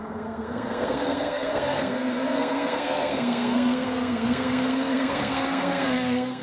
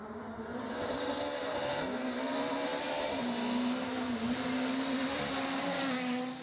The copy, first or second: first